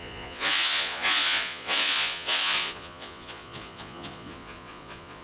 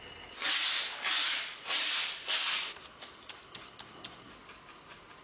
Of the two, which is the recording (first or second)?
second